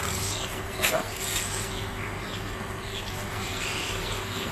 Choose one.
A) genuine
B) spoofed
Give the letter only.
B